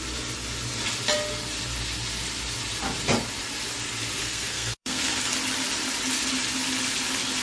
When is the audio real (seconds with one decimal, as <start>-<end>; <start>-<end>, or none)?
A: 0.0-4.2; 5.2-7.4